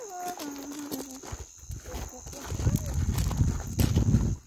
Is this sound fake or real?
real